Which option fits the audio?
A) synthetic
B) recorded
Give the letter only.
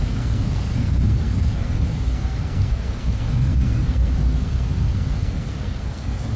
A